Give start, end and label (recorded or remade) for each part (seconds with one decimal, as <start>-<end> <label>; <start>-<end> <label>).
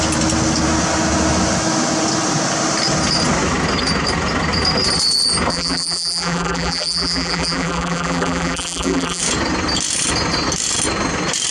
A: 0.0-5.5 recorded; 5.5-9.2 remade; 9.2-11.5 recorded